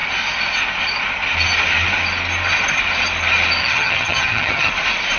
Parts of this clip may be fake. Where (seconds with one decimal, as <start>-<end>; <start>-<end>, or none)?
3.6-4.7